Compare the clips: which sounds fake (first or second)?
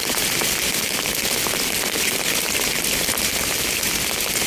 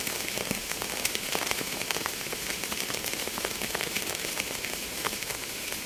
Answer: second